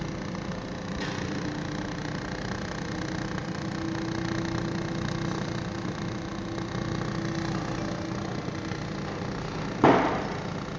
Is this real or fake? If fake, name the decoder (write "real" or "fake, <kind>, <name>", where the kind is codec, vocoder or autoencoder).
real